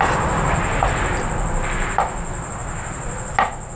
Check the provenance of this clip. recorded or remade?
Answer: recorded